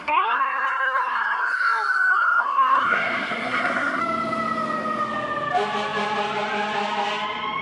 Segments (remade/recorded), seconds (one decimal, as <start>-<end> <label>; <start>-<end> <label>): 0.0-4.0 remade; 4.0-7.6 recorded

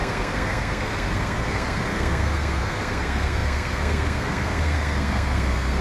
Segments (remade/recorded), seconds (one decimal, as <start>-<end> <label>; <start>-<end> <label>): 0.0-5.8 remade

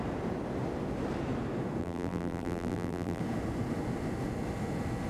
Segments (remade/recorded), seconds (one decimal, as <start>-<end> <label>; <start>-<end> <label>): 0.0-1.8 recorded; 1.8-3.2 remade; 3.2-5.1 recorded

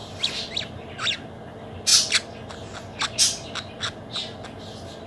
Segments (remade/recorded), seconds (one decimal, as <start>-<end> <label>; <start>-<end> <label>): 0.0-5.1 recorded

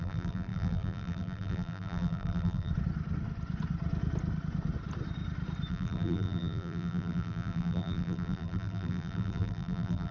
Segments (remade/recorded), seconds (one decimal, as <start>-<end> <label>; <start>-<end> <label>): 0.0-2.7 remade; 2.7-5.7 recorded; 5.7-10.1 remade

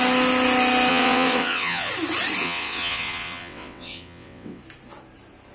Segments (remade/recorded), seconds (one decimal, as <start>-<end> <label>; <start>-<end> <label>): 0.0-0.9 recorded; 0.9-1.9 remade; 1.9-2.4 recorded; 2.4-4.6 remade; 4.6-5.5 recorded

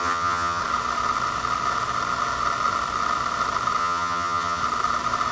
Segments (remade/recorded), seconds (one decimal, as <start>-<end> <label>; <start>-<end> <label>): 0.0-0.6 remade; 0.6-3.8 recorded; 3.8-4.6 remade; 4.6-5.3 recorded

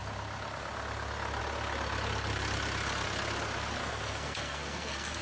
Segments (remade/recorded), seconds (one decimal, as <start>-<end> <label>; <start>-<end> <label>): 0.0-3.8 recorded; 3.8-5.2 remade